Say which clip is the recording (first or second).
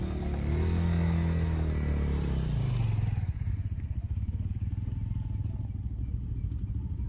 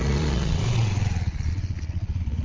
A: first